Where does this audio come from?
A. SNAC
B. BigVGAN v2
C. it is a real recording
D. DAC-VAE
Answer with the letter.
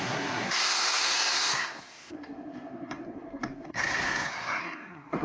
A